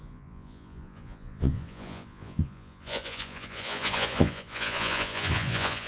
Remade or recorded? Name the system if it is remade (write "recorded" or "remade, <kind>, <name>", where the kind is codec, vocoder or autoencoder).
remade, vocoder, Vocos